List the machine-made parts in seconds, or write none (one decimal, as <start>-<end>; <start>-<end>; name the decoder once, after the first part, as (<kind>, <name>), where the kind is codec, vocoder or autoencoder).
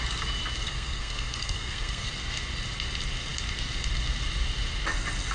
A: 0.6-2.1 (codec, SNAC)